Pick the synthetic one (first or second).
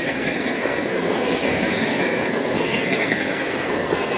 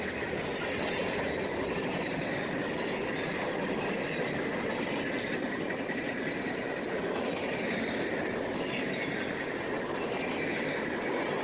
first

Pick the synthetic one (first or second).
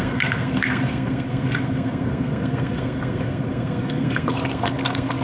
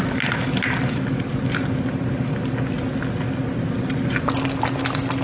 first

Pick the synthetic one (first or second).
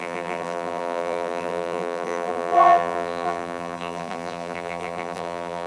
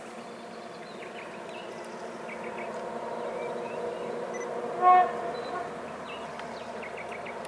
first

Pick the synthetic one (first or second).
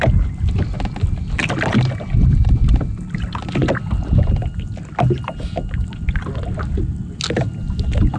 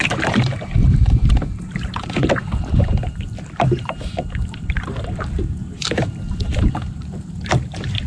second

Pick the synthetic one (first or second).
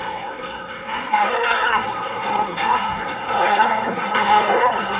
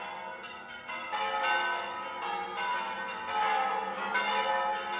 first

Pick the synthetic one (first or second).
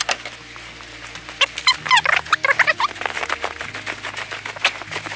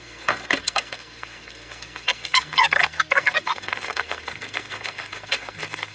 second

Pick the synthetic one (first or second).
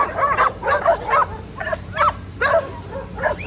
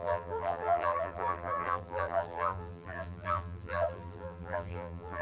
second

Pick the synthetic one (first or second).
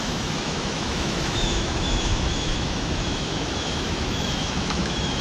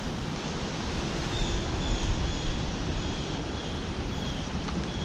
first